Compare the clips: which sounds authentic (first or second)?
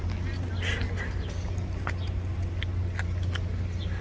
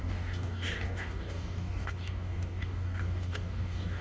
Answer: first